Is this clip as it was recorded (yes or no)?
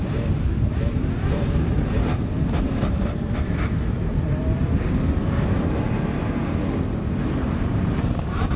no